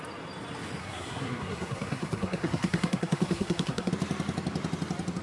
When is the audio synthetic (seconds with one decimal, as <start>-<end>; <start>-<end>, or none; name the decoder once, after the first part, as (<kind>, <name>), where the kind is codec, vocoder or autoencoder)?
0.8-3.9 (codec, SNAC)